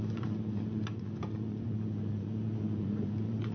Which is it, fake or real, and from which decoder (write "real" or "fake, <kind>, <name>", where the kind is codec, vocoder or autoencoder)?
fake, vocoder, Vocos